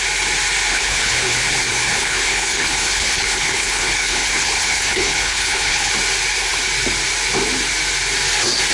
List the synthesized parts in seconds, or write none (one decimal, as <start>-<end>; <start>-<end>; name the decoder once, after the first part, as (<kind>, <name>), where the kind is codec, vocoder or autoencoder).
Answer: 0.7-5.9 (codec, HILCodec)